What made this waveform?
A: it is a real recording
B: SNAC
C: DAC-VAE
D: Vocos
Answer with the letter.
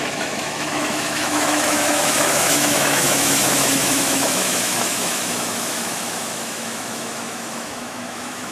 C